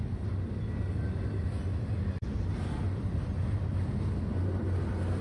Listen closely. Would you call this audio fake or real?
real